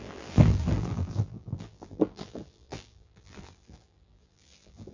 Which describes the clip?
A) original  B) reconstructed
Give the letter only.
B